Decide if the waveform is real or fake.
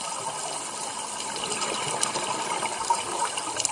real